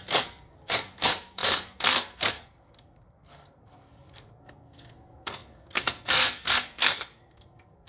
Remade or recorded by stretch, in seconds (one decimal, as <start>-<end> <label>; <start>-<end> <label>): 0.0-7.9 remade